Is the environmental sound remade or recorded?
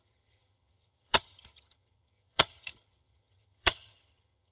remade